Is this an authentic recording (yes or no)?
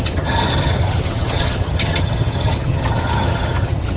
no